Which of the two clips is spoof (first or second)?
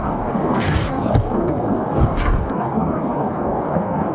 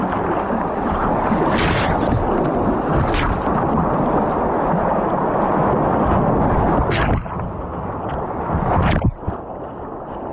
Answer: first